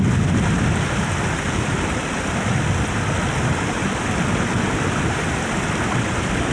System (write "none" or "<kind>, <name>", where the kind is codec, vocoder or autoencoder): none